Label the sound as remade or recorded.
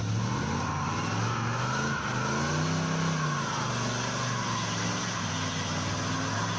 recorded